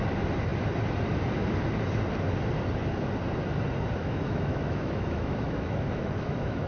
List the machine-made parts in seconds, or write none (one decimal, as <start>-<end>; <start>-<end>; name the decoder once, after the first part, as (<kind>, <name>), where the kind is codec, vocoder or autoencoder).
4.0-6.7 (autoencoder, DAC-VAE)